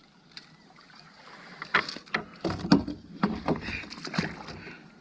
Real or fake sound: real